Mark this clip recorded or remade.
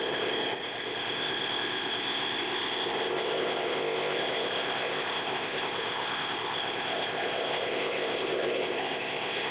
remade